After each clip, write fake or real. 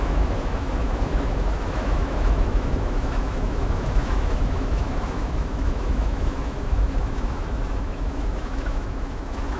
fake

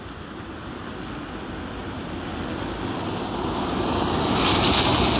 real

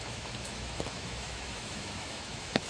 fake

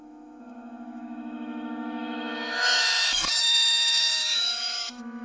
fake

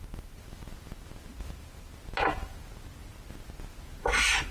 real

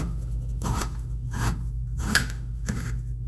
fake